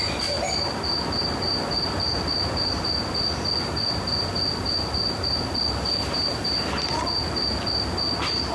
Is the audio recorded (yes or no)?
yes